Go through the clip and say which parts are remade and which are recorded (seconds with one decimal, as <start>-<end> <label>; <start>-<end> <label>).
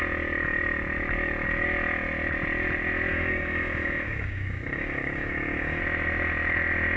0.0-3.1 recorded; 3.1-5.8 remade; 5.8-7.0 recorded